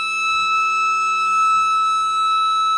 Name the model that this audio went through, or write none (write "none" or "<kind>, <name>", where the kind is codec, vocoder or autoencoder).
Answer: none